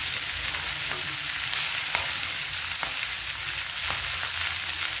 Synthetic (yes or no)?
no